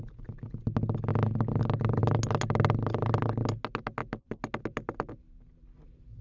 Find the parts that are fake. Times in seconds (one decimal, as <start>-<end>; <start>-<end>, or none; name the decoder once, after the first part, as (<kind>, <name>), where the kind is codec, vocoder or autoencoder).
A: none